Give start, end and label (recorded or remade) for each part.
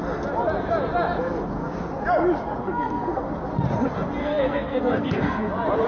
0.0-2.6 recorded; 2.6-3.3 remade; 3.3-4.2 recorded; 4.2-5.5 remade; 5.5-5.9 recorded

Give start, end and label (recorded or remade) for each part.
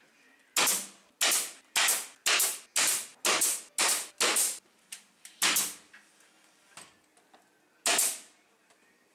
0.0-9.1 recorded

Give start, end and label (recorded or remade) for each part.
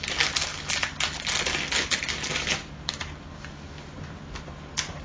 0.0-5.0 recorded